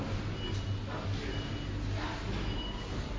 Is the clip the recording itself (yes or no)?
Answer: yes